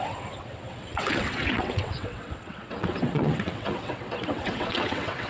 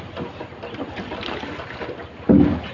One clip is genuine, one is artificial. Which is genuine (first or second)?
second